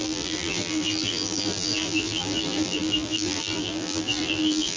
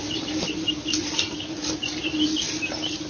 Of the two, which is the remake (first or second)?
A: first